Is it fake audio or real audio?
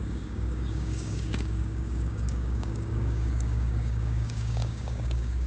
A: fake